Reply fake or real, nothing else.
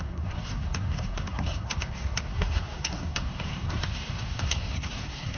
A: fake